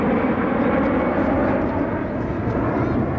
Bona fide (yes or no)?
yes